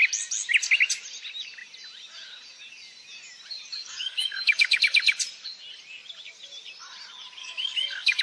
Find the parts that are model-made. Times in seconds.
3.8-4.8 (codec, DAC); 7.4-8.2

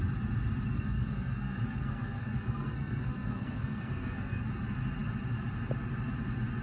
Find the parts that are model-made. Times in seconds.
0.7-4.5 (codec, SNAC)